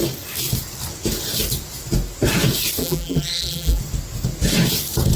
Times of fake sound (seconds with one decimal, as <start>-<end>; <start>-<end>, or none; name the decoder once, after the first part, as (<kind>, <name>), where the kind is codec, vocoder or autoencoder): 2.8-3.8 (vocoder, BigVGAN v2)